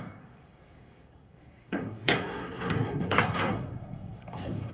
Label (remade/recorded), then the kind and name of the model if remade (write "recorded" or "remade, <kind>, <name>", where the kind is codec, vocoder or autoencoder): remade, codec, SNAC